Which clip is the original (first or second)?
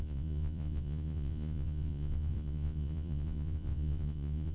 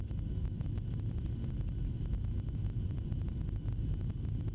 second